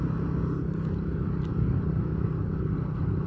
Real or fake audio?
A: real